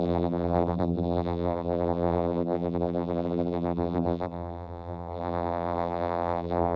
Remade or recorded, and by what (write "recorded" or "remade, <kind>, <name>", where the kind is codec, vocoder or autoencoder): remade, vocoder, BigVGAN v2